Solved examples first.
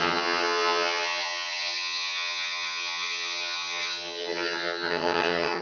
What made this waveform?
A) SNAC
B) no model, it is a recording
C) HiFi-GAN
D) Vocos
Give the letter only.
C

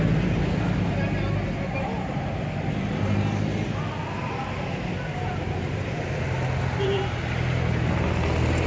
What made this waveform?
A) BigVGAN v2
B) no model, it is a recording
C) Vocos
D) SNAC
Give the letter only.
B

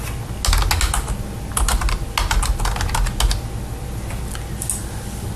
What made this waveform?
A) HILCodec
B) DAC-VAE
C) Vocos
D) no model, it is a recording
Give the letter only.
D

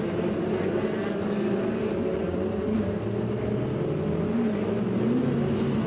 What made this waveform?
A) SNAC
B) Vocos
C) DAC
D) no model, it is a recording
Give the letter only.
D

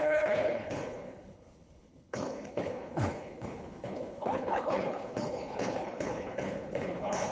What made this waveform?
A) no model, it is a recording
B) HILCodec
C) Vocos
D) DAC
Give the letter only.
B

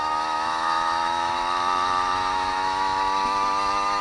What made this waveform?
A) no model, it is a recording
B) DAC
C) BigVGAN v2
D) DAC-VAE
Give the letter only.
D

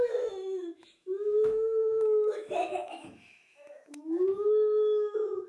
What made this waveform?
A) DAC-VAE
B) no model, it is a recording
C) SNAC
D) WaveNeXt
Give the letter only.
A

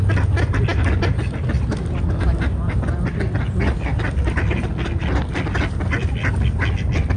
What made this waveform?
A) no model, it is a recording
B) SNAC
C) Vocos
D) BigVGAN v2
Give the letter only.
A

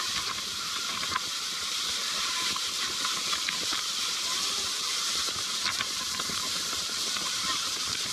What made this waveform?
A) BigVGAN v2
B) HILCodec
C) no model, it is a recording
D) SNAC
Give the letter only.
A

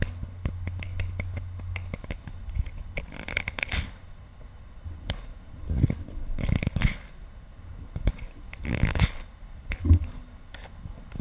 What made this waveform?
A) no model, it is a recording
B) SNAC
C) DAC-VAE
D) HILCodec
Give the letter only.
D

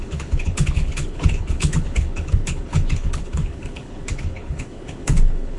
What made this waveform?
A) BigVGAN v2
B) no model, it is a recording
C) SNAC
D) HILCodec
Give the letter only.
D